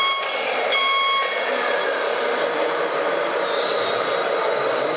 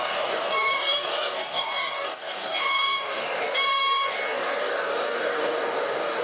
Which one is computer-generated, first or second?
second